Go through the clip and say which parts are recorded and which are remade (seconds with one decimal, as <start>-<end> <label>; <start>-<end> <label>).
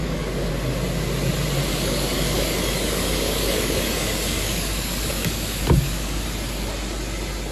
0.0-0.5 remade; 0.5-1.7 recorded; 1.7-6.2 remade; 6.2-7.5 recorded